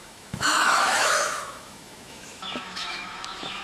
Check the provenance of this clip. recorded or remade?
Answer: remade